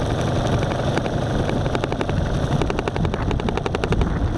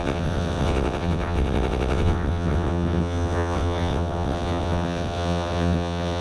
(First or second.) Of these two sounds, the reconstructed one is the second